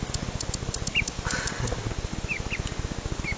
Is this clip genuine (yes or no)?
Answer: yes